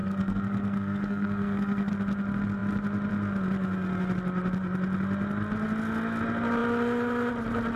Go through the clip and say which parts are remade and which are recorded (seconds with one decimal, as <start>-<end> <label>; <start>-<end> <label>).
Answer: 0.0-1.9 remade; 1.9-7.8 recorded